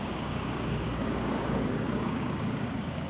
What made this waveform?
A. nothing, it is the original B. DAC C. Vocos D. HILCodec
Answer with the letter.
B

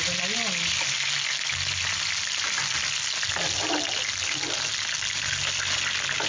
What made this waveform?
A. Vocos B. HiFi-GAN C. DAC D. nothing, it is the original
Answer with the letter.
D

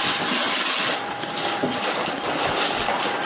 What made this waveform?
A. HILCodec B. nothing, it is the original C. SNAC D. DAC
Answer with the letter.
B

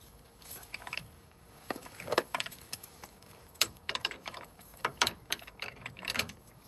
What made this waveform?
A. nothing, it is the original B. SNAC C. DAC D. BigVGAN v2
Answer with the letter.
C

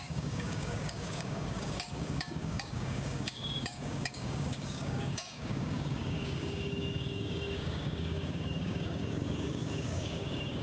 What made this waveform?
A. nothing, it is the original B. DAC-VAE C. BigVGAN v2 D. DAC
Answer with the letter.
D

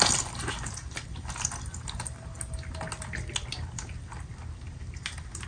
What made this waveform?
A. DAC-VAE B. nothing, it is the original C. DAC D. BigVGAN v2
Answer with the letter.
B